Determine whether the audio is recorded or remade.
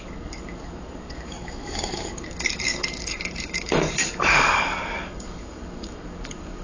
remade